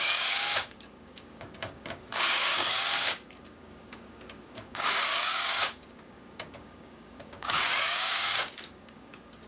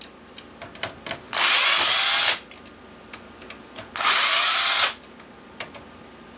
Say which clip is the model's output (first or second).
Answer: first